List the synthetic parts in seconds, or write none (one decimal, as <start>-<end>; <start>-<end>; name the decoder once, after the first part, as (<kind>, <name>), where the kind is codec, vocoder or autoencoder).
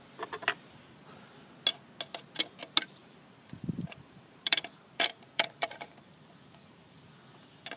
3.0-7.1 (vocoder, BigVGAN v2)